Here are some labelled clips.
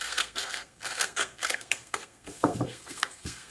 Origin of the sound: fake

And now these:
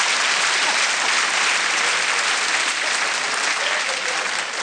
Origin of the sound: real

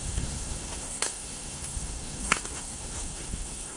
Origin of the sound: fake